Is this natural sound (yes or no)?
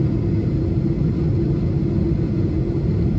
yes